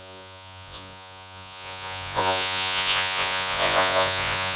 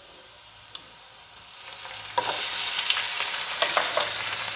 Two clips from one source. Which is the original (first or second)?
second